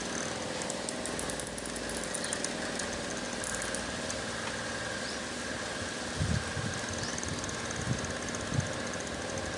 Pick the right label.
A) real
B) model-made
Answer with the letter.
A